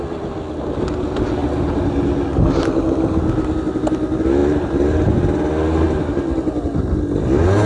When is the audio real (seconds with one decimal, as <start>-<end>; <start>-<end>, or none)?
0.0-7.7